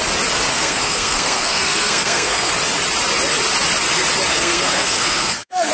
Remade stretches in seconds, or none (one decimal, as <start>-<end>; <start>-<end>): 0.5-2.5; 4.3-5.7